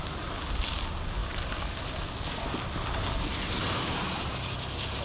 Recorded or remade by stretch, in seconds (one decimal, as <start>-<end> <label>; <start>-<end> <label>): 0.0-5.0 recorded